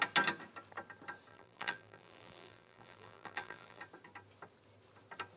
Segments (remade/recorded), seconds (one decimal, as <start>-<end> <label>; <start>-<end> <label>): 0.0-1.3 recorded; 1.3-3.8 remade; 3.8-5.4 recorded